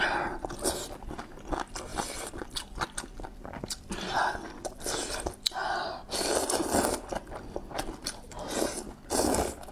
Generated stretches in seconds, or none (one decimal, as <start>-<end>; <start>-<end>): none